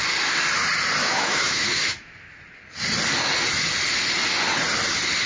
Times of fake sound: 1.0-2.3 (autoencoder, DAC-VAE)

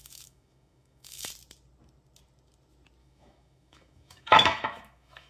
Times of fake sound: 0.0-1.3 (autoencoder, DAC-VAE); 3.0-5.3

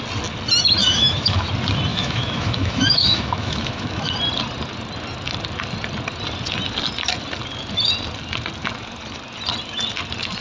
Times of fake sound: 0.8-1.5 (autoencoder, DAC-VAE); 1.9-4.1

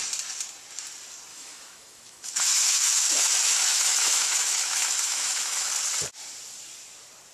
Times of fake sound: 1.3-5.7 (autoencoder, DAC-VAE)

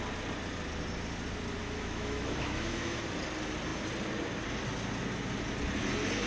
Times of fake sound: 1.6-3.0 (autoencoder, DAC-VAE)